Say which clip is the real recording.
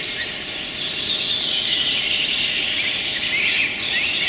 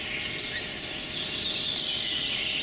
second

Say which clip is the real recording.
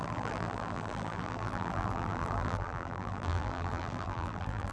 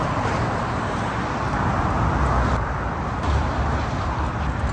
second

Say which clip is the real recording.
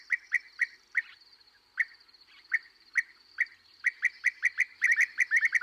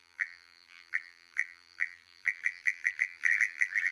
first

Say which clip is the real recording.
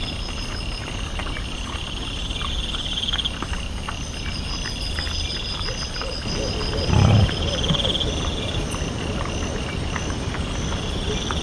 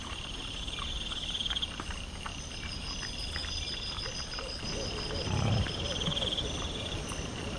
first